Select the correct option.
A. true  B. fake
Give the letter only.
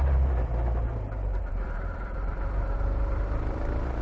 B